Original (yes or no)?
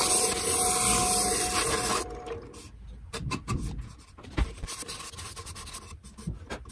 yes